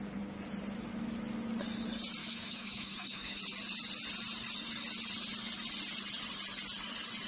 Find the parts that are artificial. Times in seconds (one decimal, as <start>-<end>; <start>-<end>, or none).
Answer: 2.2-3.4